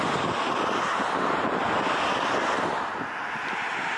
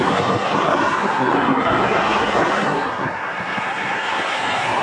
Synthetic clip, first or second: second